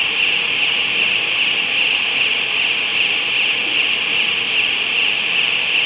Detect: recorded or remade remade